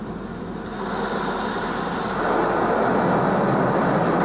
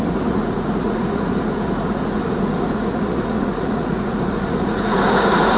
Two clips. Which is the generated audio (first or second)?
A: second